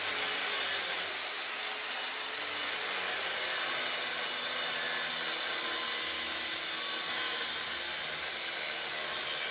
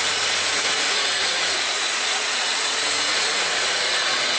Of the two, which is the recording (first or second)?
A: first